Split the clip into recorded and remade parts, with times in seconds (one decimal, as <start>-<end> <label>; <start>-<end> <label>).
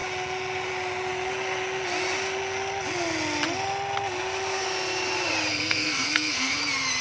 0.0-5.5 recorded; 5.5-6.6 remade; 6.6-7.0 recorded